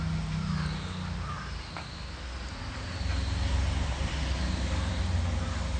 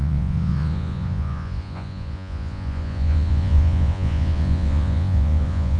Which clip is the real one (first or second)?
first